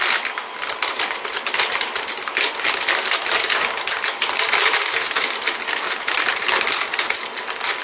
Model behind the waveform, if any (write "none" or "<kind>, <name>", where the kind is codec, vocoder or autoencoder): none